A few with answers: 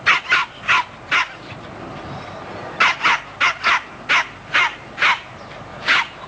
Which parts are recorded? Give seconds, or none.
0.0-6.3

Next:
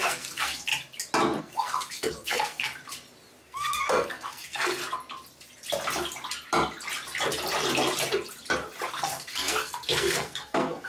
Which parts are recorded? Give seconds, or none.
0.7-1.4; 2.7-3.4; 4.8-8.9

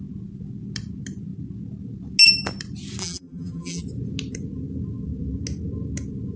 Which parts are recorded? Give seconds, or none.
0.0-3.0; 3.8-6.4

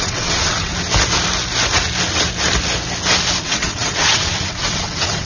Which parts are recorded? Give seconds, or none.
0.7-3.4

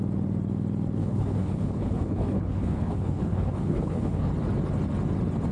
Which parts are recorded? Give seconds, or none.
0.0-1.0; 4.3-5.5

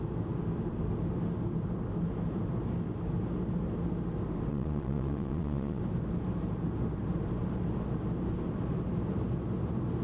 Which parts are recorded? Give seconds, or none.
0.0-4.5; 5.8-10.0